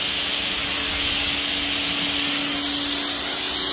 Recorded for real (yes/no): yes